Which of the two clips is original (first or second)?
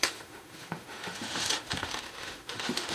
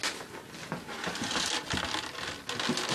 second